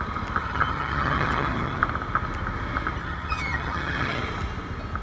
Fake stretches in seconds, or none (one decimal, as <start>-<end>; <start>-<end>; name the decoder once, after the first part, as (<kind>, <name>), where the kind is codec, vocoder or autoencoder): 0.4-1.8 (vocoder, HiFi-GAN); 3.0-4.2